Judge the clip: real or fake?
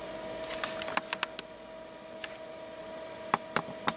real